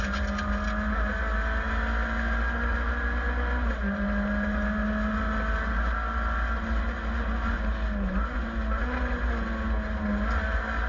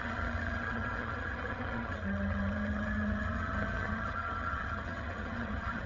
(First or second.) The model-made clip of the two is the second